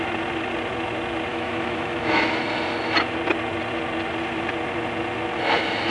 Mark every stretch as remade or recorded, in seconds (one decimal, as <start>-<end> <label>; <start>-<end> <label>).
0.0-1.3 recorded; 1.3-2.4 remade; 2.4-5.9 recorded